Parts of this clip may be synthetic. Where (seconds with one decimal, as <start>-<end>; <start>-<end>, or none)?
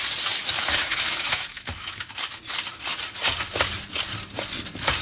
0.4-2.4